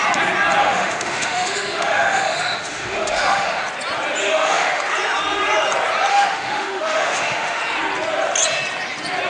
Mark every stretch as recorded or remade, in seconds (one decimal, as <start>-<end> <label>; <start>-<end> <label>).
0.0-0.6 recorded; 0.6-3.6 remade; 3.6-4.2 recorded; 4.2-4.8 remade; 4.8-6.1 recorded; 6.1-7.6 remade; 7.6-9.3 recorded